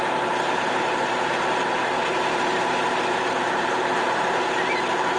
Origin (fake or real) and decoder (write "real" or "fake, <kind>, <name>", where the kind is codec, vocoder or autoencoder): fake, vocoder, BigVGAN v2